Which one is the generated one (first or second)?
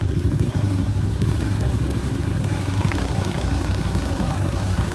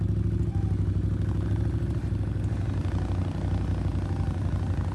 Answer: first